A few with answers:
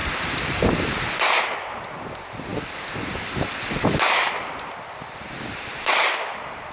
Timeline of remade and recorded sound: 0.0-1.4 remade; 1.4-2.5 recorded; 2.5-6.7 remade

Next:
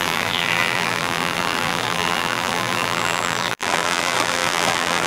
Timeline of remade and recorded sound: 0.0-5.1 remade

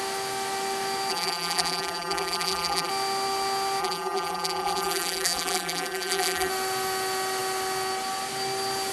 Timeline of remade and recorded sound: 0.0-1.1 recorded; 1.1-2.9 remade; 2.9-3.8 recorded; 3.8-6.5 remade; 6.5-8.9 recorded

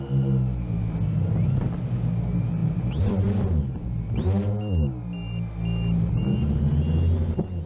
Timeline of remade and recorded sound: 0.0-2.6 recorded; 2.6-3.6 remade; 3.6-7.7 recorded

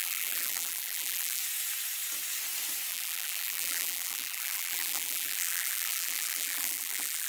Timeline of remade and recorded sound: 0.0-1.4 remade; 1.4-2.9 recorded; 2.9-7.3 remade

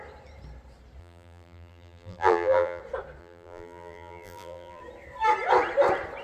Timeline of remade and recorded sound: 0.0-1.0 recorded; 1.0-2.8 remade; 2.8-3.2 recorded; 3.2-4.8 remade; 4.8-6.2 recorded